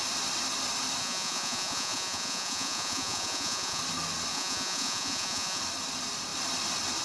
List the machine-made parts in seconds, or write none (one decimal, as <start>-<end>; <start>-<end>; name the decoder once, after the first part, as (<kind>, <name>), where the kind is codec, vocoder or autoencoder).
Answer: 1.0-3.8 (vocoder, Vocos); 4.3-5.6